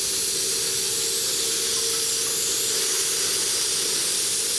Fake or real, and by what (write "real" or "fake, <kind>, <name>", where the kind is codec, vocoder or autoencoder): real